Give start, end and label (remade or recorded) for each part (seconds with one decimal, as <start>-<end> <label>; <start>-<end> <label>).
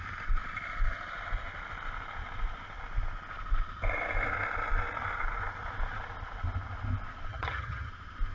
0.0-7.3 recorded; 7.3-7.9 remade; 7.9-8.3 recorded